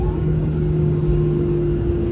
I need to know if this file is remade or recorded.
remade